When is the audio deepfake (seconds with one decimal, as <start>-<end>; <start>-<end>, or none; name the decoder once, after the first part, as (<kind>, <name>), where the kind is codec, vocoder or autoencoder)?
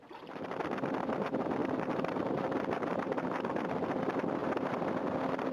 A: 1.6-3.6 (vocoder, BigVGAN v2)